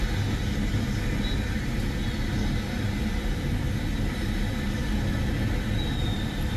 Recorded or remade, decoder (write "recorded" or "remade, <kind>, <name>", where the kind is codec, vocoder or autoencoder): recorded